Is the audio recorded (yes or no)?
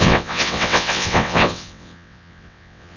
no